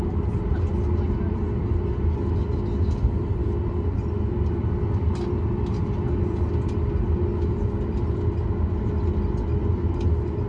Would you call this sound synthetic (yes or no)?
no